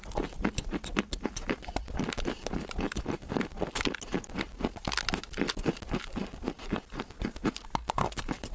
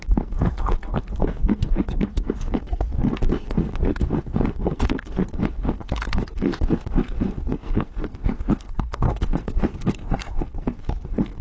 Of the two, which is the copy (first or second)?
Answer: second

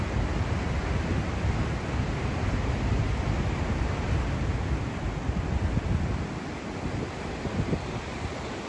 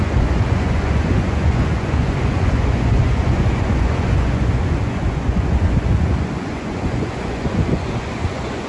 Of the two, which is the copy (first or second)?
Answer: second